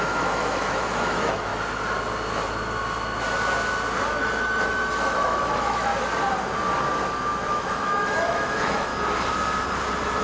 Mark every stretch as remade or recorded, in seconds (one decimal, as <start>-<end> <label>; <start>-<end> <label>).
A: 0.0-1.5 remade; 1.5-4.2 recorded; 4.2-5.9 remade; 5.9-7.5 recorded; 7.5-8.9 remade; 8.9-10.2 recorded